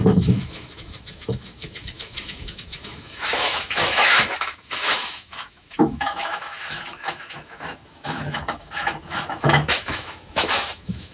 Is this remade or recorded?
remade